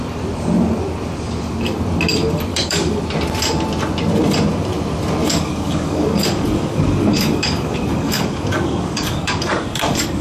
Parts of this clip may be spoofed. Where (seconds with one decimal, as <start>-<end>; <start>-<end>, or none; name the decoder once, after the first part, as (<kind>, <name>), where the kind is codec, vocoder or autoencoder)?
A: 2.5-3.0 (codec, DAC); 5.2-10.2